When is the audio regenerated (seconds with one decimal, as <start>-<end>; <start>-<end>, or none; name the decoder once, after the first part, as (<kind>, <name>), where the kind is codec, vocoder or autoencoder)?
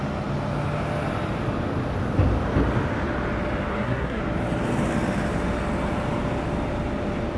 3.7-4.2 (codec, SNAC)